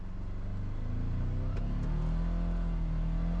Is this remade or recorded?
recorded